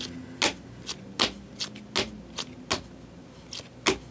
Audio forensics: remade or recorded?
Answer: recorded